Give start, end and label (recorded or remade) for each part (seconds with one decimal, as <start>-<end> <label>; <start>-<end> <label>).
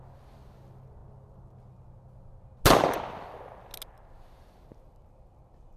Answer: 0.0-5.8 recorded